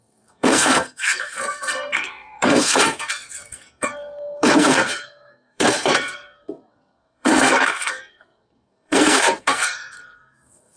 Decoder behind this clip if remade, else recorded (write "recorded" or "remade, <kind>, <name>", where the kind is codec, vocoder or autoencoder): remade, codec, SNAC